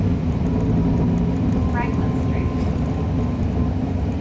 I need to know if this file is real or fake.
real